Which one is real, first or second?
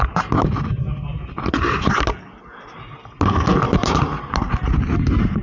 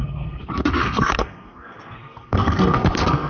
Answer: first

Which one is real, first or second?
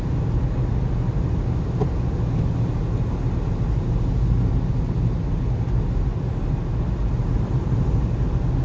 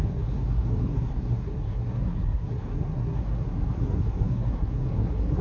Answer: first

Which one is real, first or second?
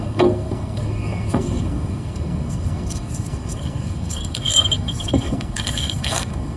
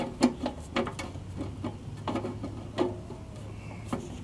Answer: second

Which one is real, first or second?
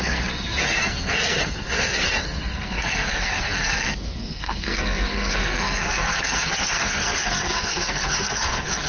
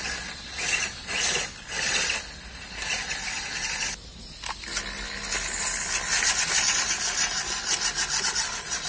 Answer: second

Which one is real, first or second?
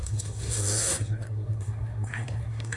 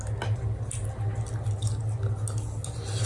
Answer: second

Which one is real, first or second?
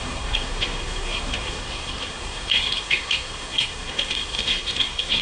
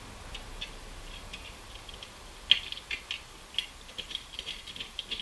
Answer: second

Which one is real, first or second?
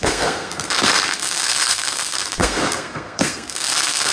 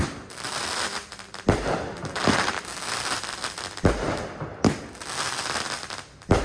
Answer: second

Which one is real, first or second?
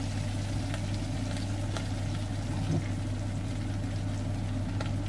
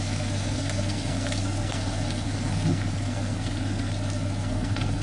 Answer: first